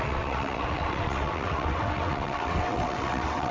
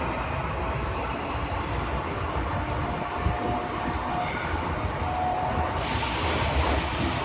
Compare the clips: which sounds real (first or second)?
second